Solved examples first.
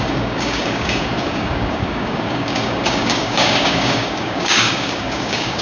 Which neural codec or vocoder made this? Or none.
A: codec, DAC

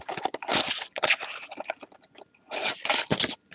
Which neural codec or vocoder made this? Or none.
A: none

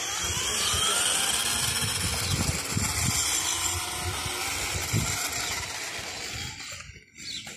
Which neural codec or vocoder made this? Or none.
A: none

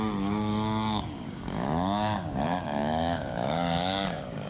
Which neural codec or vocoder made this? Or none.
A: codec, DAC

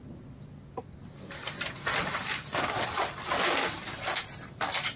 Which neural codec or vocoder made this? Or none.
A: none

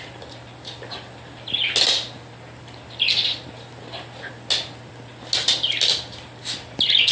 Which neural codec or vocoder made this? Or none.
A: none